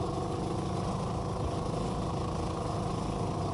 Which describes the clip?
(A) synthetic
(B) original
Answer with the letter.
B